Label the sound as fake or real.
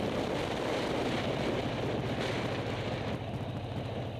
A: real